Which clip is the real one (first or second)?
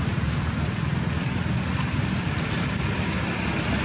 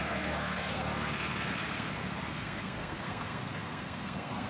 first